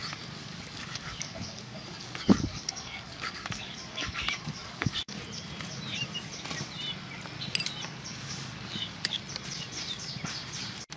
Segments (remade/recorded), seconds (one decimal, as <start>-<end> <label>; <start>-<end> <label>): 0.0-0.4 recorded; 0.4-5.2 remade; 5.2-8.1 recorded; 8.1-9.2 remade; 9.2-11.0 recorded